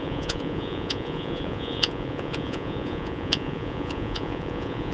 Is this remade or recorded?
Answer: remade